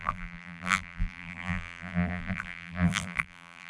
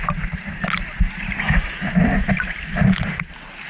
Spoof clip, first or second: first